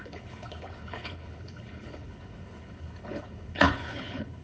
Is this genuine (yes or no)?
no